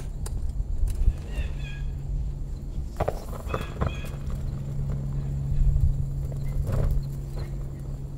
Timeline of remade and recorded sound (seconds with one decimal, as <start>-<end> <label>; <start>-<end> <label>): 0.0-8.2 recorded